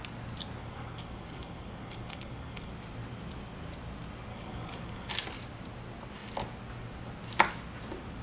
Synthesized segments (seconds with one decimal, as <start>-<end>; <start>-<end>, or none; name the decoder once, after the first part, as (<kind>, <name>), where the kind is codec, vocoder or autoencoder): 0.6-2.7 (codec, DAC); 4.3-5.1